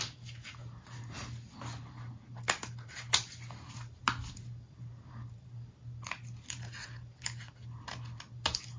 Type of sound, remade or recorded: recorded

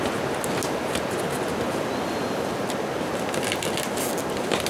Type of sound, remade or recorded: recorded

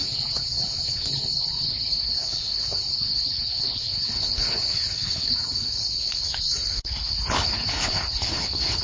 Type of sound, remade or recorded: remade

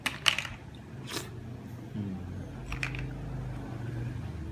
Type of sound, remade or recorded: recorded